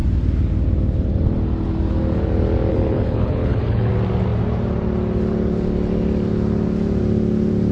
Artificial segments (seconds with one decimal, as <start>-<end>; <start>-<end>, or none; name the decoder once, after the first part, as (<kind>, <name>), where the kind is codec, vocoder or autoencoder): 2.7-3.9 (codec, HILCodec)